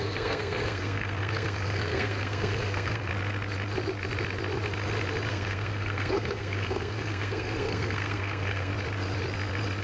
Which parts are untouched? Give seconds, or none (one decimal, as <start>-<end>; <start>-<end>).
3.1-5.3; 8.7-9.8